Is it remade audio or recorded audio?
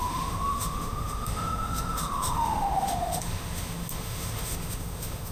remade